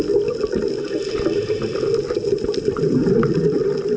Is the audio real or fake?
real